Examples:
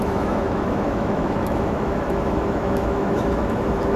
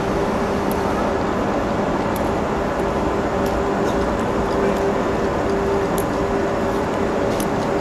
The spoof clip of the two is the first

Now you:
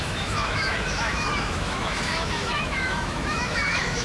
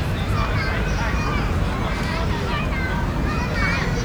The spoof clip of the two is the first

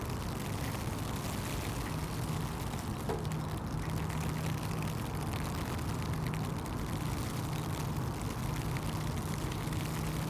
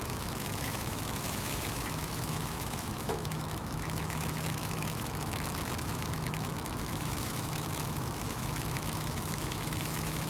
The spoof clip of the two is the second